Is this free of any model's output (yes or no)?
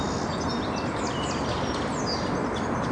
yes